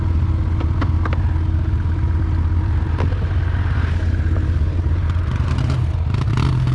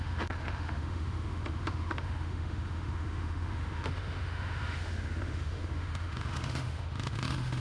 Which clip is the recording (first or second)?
first